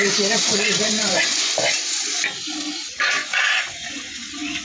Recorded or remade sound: remade